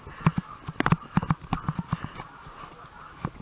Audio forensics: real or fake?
real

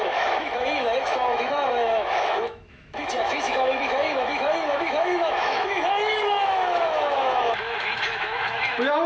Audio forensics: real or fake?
fake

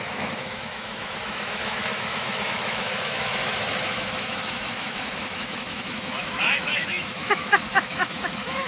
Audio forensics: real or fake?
fake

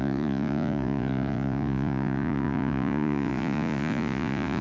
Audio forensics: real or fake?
fake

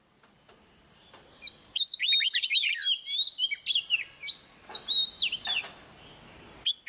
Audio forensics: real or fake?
real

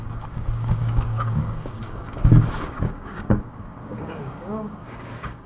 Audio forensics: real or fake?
fake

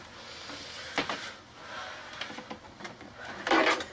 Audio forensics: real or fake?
real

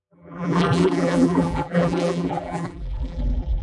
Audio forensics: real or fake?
fake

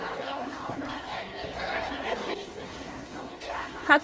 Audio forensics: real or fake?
fake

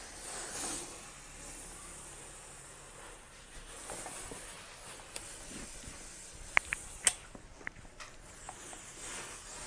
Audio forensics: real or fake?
real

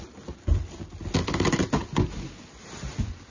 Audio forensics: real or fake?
real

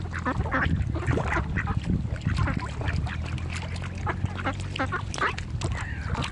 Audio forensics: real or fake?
real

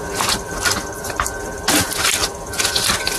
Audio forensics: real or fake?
real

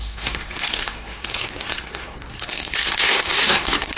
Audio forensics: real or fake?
fake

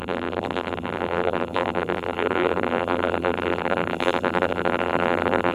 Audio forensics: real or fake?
fake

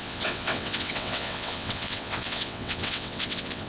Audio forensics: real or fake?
fake